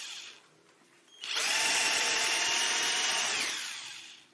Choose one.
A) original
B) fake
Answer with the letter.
B